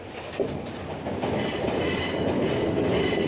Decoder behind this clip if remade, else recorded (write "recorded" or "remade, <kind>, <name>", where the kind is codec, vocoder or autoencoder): recorded